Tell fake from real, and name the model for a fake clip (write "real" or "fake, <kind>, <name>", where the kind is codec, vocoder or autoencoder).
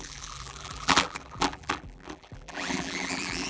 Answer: fake, vocoder, BigVGAN v2